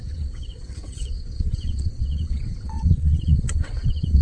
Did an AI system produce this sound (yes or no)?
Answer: yes